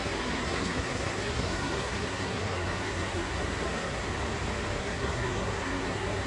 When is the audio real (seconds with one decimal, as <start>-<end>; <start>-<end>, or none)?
4.0-4.8

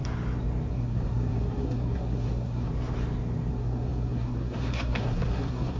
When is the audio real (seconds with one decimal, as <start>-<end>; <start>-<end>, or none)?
0.0-0.7; 2.7-3.5

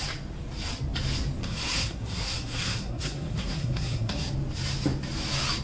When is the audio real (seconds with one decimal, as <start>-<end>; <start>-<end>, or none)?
0.0-1.4; 4.3-5.6

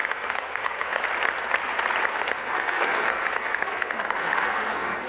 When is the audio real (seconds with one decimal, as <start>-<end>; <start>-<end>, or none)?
1.0-2.1

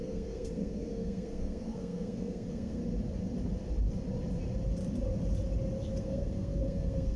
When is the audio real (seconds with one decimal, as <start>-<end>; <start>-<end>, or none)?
2.8-6.0

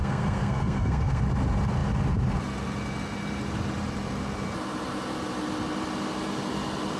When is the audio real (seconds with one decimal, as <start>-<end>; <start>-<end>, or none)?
1.2-7.0